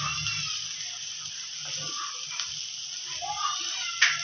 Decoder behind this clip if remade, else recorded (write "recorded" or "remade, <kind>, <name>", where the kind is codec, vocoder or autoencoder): recorded